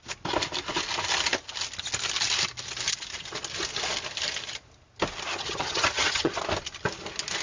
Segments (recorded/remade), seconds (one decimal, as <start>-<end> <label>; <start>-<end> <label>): 0.0-5.3 recorded; 5.3-6.3 remade; 6.3-7.4 recorded